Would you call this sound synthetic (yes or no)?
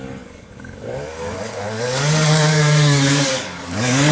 yes